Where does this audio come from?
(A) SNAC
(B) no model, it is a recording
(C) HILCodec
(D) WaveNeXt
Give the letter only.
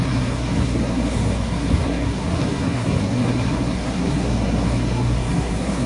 A